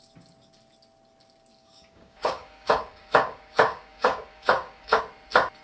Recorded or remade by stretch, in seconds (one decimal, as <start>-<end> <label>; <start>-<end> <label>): 0.0-1.6 recorded; 1.6-5.0 remade; 5.0-5.6 recorded